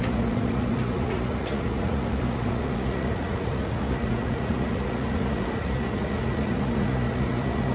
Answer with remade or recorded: remade